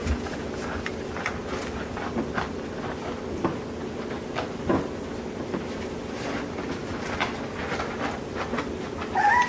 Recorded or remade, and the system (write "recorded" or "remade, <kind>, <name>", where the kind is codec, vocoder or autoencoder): recorded